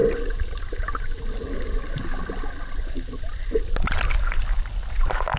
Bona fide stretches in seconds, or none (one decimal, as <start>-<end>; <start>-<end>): 0.0-5.4